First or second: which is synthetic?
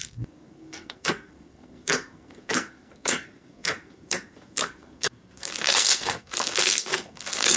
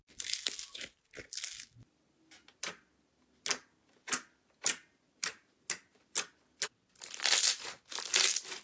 first